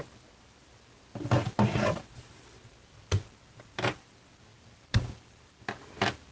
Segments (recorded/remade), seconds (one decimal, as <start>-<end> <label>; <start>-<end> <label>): 0.0-1.0 recorded; 1.0-2.3 remade; 2.3-4.5 recorded; 4.5-5.6 remade; 5.6-6.3 recorded